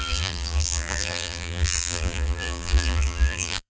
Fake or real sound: fake